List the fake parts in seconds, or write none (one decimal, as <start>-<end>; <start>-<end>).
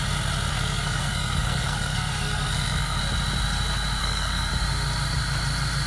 0.5-3.0; 4.0-4.5